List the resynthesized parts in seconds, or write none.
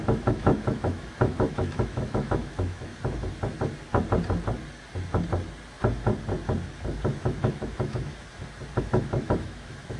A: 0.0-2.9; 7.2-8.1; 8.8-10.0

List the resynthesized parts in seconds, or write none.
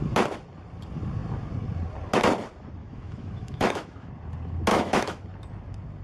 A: 2.8-4.1; 4.7-5.2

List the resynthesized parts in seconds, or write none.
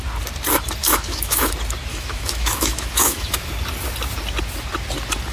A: 0.8-1.5; 1.9-3.5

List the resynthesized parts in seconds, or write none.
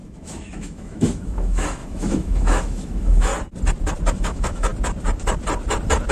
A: 0.0-3.3; 4.1-4.7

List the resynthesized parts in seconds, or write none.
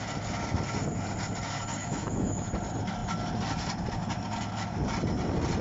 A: 1.8-2.5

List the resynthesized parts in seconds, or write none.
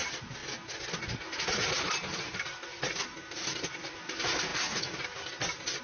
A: none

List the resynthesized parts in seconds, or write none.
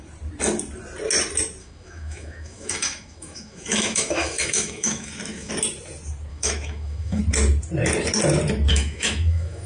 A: 1.6-5.5; 6.3-7.2; 8.7-9.7